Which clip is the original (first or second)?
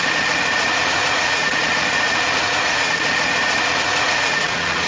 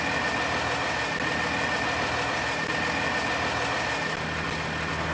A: second